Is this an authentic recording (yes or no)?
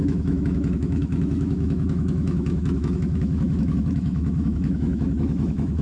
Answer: no